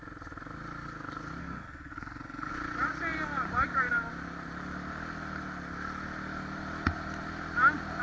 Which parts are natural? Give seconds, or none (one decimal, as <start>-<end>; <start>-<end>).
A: 0.0-1.4; 2.5-8.0